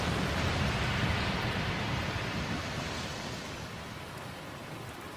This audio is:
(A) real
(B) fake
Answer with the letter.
A